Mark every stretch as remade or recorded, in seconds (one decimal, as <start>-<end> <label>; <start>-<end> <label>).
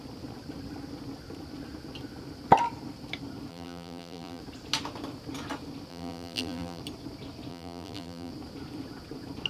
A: 0.0-3.5 recorded; 3.5-4.4 remade; 4.4-5.9 recorded; 5.9-6.8 remade; 6.8-7.5 recorded; 7.5-8.3 remade; 8.3-9.5 recorded